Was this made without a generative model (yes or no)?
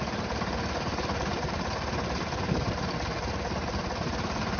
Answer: no